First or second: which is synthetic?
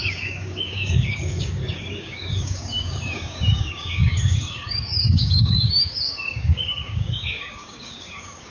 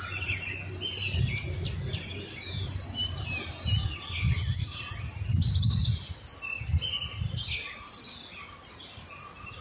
first